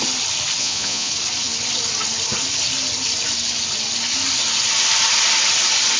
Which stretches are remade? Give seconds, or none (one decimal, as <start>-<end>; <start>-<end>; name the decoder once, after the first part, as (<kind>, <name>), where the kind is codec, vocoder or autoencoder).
0.6-1.1 (vocoder, Vocos)